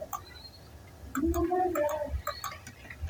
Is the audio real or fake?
fake